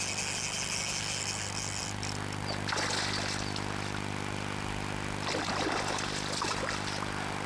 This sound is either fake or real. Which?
real